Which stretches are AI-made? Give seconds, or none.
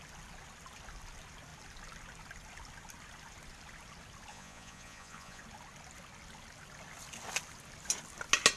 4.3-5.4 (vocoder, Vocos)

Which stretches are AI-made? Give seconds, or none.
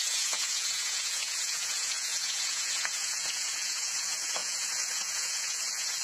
0.0-6.0 (vocoder, Vocos)